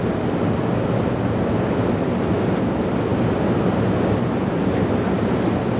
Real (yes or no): yes